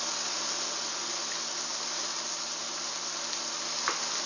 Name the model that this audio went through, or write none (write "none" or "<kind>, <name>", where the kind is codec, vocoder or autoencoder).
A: none